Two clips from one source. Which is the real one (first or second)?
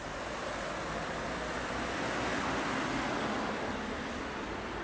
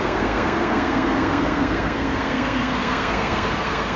first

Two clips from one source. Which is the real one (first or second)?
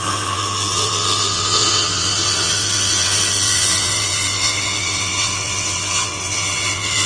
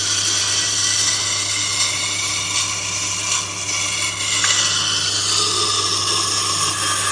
second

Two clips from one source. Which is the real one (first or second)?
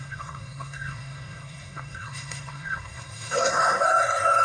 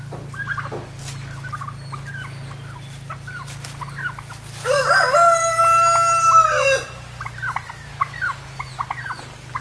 second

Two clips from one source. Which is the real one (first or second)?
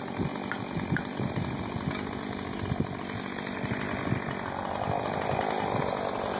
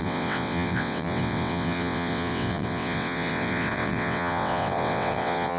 first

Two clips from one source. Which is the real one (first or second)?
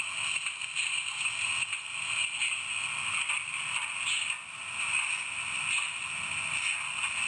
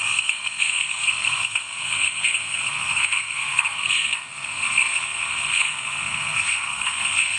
first